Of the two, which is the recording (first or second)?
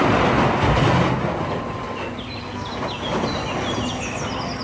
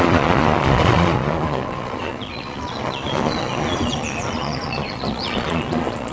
first